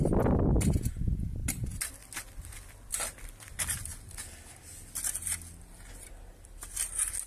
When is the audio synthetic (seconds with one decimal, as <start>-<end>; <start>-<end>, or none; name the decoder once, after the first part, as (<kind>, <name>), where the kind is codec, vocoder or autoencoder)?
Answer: none